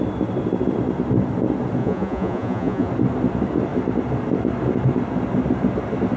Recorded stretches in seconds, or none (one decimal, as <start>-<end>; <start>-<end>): 0.0-1.8; 2.9-6.2